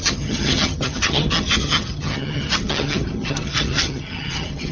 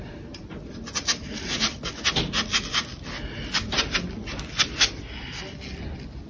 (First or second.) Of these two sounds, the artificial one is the first